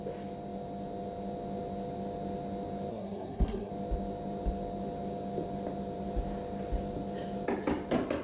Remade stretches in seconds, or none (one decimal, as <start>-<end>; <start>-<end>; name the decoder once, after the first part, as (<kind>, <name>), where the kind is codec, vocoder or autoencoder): 2.9-3.7 (codec, SNAC)